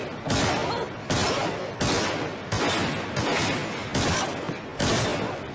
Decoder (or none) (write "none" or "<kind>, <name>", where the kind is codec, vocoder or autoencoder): none